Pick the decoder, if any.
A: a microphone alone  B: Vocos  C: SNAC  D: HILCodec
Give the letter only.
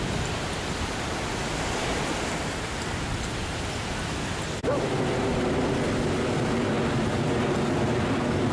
A